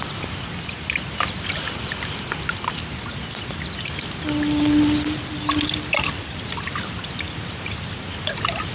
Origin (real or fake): fake